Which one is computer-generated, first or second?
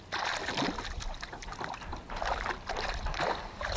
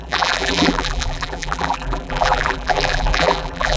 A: second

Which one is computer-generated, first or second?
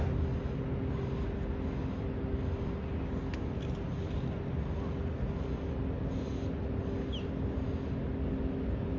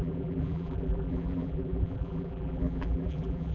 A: second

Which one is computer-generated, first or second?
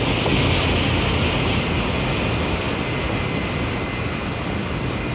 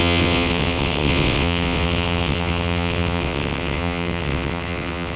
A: second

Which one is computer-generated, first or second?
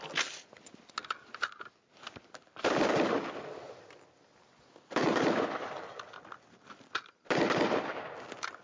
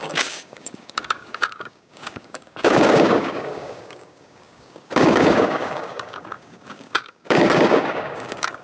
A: second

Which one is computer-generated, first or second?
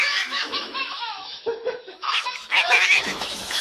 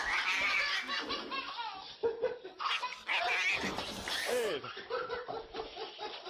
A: first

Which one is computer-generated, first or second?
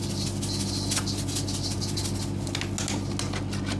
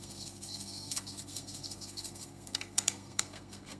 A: second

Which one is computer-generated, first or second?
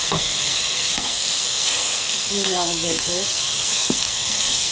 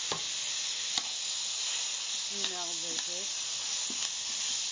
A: first